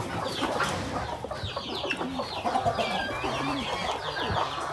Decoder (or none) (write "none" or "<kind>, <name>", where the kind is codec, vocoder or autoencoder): none